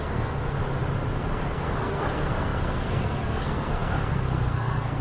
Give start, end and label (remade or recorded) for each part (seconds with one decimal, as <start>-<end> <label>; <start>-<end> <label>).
0.0-0.6 remade; 0.6-1.2 recorded; 1.2-5.0 remade